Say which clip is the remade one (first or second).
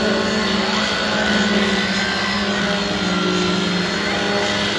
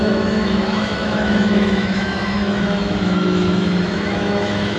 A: second